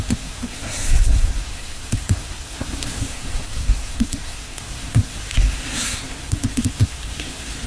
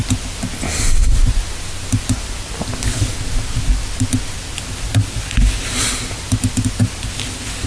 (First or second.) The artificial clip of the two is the first